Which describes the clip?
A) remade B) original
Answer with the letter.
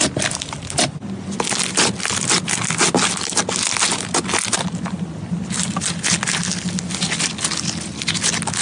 B